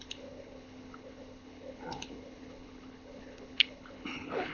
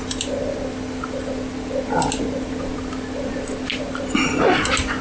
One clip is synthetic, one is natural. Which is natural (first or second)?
second